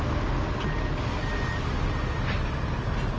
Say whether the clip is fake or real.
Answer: real